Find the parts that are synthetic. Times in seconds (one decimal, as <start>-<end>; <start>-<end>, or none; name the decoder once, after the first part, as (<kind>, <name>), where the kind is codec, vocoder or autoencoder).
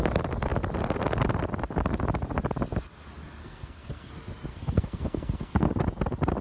3.4-4.1 (codec, SNAC); 4.5-5.7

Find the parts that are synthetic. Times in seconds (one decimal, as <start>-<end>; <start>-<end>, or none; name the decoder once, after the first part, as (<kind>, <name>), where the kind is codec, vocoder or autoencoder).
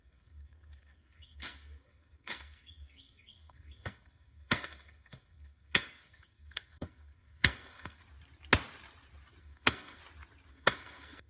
0.0-8.0 (codec, SNAC); 9.4-10.0; 10.5-11.3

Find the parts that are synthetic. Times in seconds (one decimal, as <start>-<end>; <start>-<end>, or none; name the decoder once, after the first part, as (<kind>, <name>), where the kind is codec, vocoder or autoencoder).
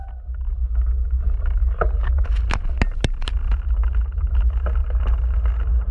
none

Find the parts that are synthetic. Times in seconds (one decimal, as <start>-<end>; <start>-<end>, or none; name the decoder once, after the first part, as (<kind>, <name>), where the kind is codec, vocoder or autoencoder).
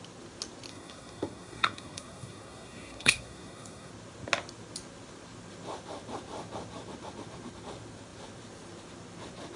0.7-3.9 (codec, SNAC)